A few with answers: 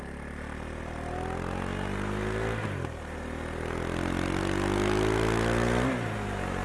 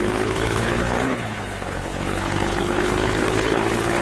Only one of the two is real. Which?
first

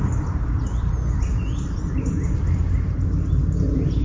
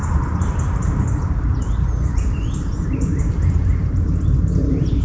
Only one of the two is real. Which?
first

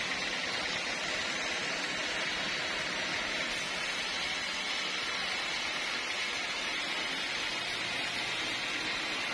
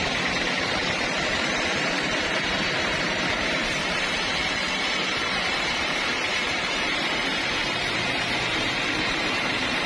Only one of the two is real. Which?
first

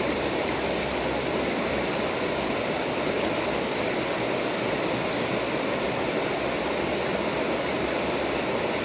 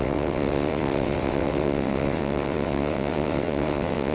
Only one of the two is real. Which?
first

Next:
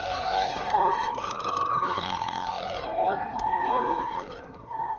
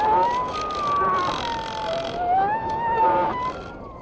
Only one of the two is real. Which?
second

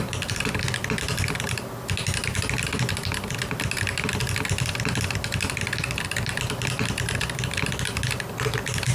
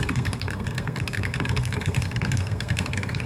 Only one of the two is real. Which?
first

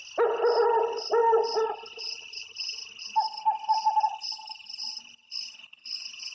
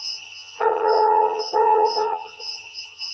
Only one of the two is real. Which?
first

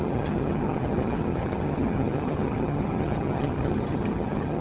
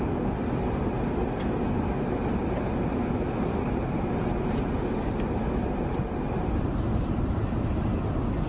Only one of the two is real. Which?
second